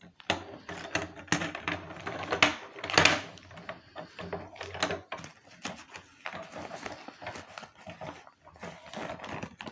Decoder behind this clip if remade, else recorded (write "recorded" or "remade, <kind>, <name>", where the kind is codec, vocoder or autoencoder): recorded